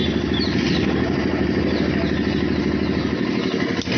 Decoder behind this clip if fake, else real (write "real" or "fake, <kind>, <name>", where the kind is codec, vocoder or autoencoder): real